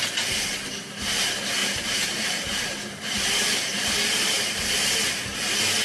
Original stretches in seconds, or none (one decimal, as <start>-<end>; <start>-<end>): 0.0-1.6; 5.1-5.8